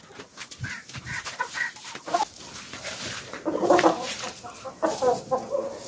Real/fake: fake